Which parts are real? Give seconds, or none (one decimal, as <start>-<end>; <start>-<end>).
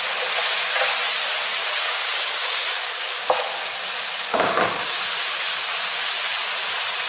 0.0-1.6; 3.2-4.3; 5.0-7.1